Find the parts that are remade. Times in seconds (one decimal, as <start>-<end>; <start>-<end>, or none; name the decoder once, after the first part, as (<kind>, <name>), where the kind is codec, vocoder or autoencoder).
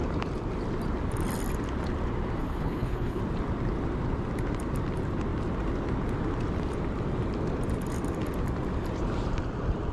2.4-3.2 (codec, HILCodec)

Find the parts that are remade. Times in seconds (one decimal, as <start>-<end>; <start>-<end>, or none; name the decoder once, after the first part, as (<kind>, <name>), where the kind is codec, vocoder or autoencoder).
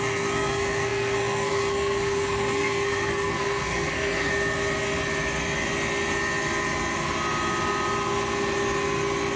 0.0-4.3 (codec, SNAC)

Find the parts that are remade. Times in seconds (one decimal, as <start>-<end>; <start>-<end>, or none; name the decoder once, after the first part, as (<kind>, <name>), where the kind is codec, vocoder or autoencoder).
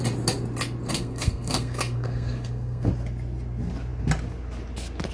0.9-2.9 (codec, SNAC)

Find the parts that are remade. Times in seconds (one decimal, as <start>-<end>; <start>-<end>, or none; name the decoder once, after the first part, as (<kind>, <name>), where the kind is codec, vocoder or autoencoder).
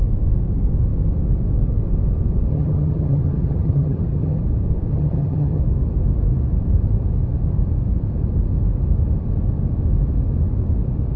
2.5-4.4 (vocoder, HiFi-GAN); 4.9-5.6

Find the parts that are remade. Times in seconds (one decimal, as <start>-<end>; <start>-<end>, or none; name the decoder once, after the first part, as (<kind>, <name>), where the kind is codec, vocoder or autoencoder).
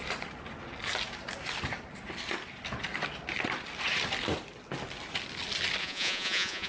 5.8-6.7 (vocoder, Vocos)